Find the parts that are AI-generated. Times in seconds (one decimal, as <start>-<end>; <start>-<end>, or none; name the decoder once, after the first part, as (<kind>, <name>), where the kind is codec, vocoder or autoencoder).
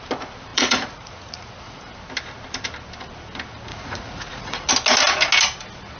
0.5-1.8 (vocoder, Vocos); 3.7-4.7